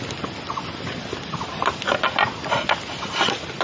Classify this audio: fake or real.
real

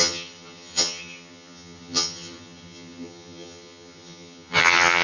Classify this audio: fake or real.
fake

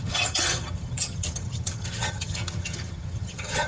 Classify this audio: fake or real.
fake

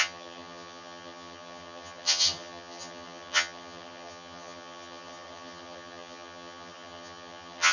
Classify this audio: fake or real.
fake